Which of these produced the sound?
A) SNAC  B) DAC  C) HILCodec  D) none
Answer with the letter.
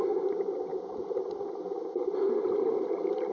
D